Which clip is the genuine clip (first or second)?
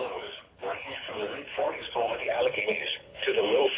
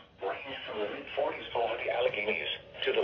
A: second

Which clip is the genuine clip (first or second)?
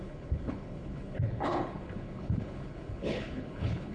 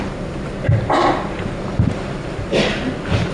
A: second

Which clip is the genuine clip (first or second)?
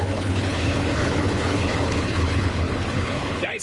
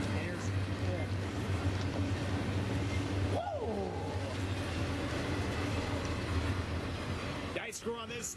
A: second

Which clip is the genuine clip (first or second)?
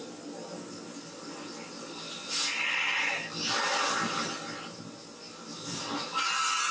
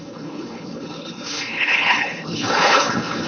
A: first